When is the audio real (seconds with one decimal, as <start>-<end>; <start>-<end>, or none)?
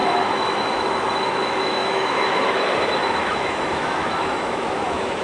none